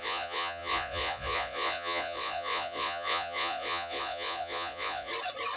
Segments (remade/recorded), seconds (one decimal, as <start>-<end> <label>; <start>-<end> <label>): 0.0-5.1 remade; 5.1-5.6 recorded